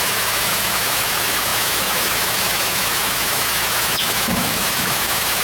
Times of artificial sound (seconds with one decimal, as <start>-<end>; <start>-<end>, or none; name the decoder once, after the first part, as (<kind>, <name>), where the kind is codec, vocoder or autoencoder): 0.0-5.4 (autoencoder, DAC-VAE)